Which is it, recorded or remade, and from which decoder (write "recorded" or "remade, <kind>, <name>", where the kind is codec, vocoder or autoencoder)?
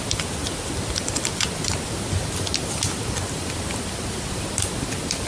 recorded